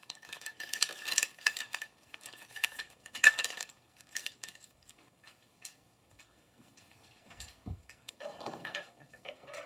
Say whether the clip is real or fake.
fake